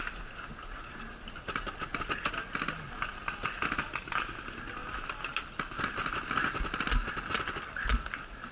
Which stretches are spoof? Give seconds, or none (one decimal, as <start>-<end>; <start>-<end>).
none